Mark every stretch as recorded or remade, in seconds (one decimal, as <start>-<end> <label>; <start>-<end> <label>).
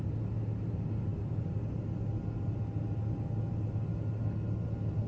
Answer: 0.0-5.1 recorded